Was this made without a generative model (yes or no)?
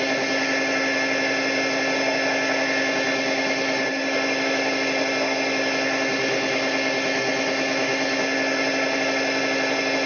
yes